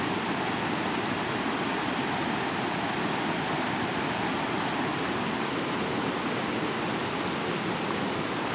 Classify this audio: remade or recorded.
recorded